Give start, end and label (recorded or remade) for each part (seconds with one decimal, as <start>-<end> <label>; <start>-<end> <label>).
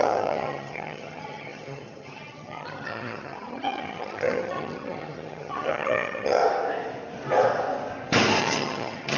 0.0-6.4 remade; 6.4-8.4 recorded; 8.4-9.2 remade